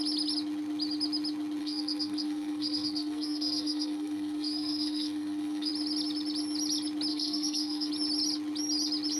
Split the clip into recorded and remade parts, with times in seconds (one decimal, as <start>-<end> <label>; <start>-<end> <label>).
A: 0.0-1.6 recorded; 1.6-5.7 remade; 5.7-7.1 recorded; 7.1-7.9 remade; 7.9-9.2 recorded